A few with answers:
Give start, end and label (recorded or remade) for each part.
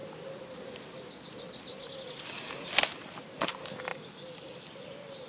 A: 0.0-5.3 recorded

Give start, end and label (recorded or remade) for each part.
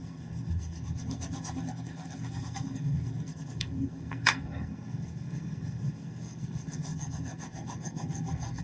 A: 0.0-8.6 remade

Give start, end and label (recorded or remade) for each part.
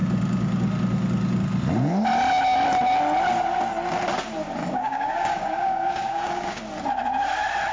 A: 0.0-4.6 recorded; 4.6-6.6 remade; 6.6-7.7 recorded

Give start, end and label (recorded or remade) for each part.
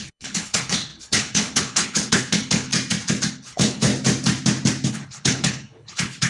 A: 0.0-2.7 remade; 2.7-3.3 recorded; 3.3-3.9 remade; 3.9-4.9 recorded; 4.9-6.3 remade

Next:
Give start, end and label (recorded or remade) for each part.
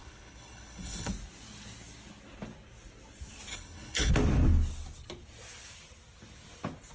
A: 0.0-1.1 remade; 1.1-3.5 recorded; 3.5-4.1 remade; 4.1-6.9 recorded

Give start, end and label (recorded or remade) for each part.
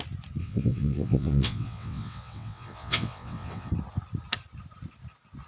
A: 0.0-0.4 recorded; 0.4-3.7 remade; 3.7-5.5 recorded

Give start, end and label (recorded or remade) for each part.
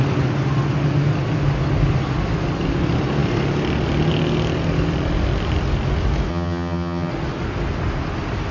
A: 0.0-6.3 recorded; 6.3-7.1 remade; 7.1-8.5 recorded